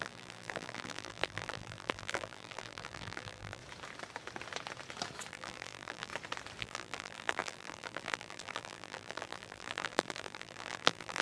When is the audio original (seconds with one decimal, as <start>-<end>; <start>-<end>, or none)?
3.6-5.3; 6.1-6.6